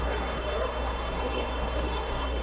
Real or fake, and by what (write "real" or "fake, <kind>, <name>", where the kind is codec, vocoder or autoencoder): fake, codec, SNAC